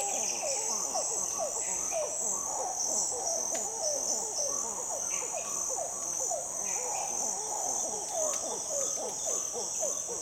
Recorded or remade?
recorded